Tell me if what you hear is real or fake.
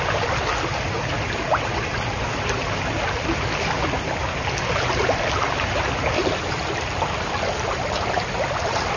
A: real